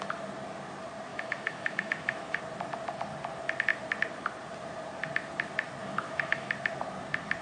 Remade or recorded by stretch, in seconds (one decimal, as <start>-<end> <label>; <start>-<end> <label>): 0.0-1.1 recorded; 1.1-2.4 remade; 2.4-5.8 recorded; 5.8-6.5 remade; 6.5-7.4 recorded